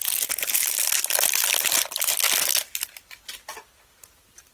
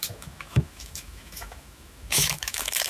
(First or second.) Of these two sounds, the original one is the first